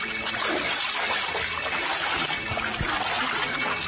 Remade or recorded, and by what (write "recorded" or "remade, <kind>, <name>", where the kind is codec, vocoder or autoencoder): recorded